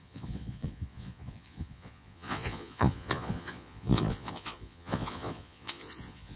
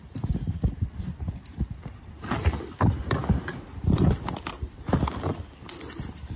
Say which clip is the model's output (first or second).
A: first